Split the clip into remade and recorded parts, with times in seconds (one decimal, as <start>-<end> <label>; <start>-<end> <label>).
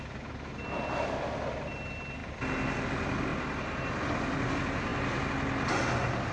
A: 0.0-6.3 recorded